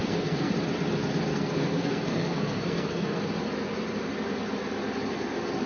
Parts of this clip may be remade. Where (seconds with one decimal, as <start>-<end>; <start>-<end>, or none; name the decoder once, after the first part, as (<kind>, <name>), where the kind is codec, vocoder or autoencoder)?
0.0-0.5 (codec, SNAC); 1.3-3.2